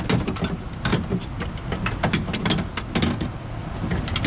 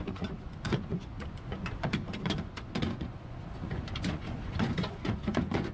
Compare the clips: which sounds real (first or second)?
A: first